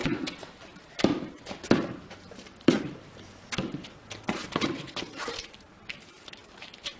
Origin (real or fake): fake